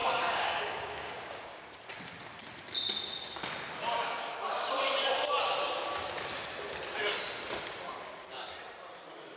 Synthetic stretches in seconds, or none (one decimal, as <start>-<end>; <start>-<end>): 0.0-1.6